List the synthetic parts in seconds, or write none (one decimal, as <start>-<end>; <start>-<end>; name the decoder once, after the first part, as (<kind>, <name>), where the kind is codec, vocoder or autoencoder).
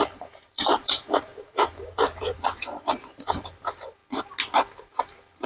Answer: 0.0-4.0 (vocoder, BigVGAN v2); 4.7-5.5